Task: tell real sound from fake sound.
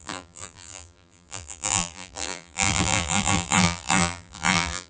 fake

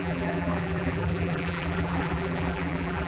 fake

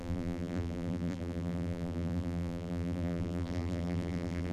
fake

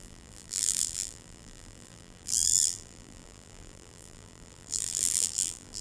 fake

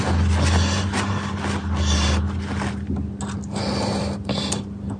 real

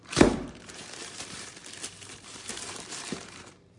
fake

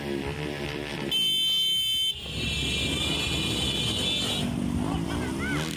real